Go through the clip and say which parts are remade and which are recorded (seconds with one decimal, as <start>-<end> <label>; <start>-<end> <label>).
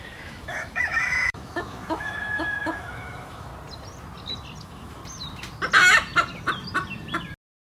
0.0-3.5 remade; 3.5-4.6 recorded; 4.6-5.0 remade; 5.0-7.7 recorded